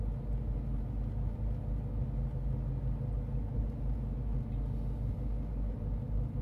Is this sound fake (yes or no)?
no